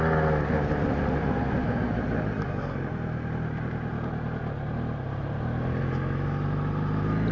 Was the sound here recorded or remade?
recorded